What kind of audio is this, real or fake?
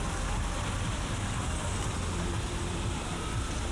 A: real